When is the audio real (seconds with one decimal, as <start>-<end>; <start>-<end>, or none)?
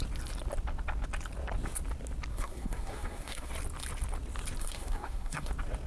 0.0-2.3; 3.5-4.6; 5.5-5.9